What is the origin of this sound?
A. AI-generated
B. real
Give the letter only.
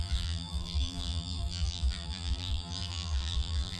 A